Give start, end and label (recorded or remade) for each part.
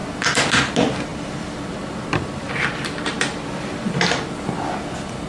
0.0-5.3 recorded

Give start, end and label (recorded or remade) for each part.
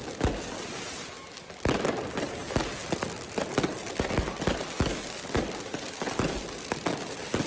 0.0-7.5 recorded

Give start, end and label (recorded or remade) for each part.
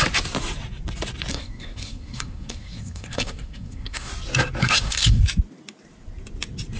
0.0-1.3 recorded; 1.3-4.1 remade; 4.1-4.6 recorded; 4.6-5.2 remade; 5.2-6.8 recorded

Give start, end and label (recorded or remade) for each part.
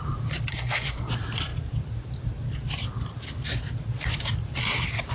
0.0-0.5 recorded; 0.5-1.1 remade; 1.1-5.1 recorded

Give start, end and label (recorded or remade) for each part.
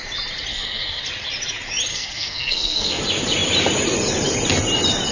0.0-0.5 recorded; 0.5-1.0 remade; 1.0-1.9 recorded; 1.9-3.0 remade; 3.0-5.1 recorded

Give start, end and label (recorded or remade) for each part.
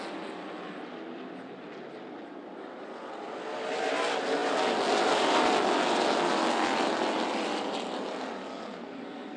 0.0-8.5 recorded; 8.5-9.4 remade